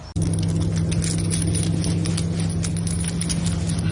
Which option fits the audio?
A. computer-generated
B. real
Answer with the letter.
B